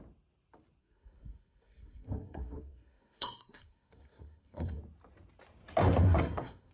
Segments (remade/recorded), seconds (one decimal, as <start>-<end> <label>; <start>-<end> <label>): 0.0-0.8 recorded; 0.8-4.8 remade; 4.8-5.8 recorded; 5.8-6.7 remade